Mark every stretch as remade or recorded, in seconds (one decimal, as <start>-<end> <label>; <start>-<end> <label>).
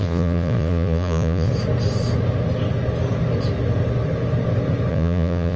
0.0-1.5 remade; 1.5-4.9 recorded; 4.9-5.6 remade